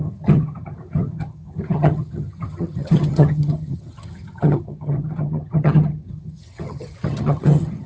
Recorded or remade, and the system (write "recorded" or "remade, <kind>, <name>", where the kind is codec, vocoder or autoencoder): remade, vocoder, HiFi-GAN